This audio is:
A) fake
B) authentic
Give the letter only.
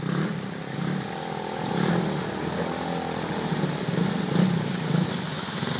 B